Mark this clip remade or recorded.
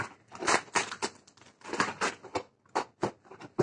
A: recorded